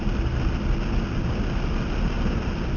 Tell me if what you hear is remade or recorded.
recorded